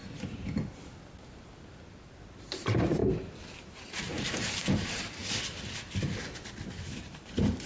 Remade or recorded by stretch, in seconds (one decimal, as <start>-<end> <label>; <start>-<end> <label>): 0.0-2.4 recorded; 2.4-3.0 remade; 3.0-3.6 recorded; 3.6-5.2 remade; 5.2-7.0 recorded; 7.0-7.7 remade